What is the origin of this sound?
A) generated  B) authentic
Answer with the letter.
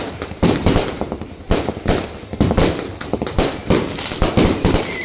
B